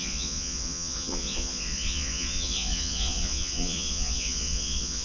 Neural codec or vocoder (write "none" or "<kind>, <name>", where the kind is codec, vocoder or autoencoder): vocoder, Vocos